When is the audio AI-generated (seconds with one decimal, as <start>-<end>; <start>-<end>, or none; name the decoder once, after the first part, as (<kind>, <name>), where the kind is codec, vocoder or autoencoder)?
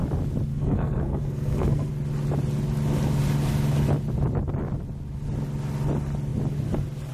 0.5-1.9 (codec, SNAC)